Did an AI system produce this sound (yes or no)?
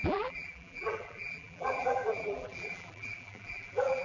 yes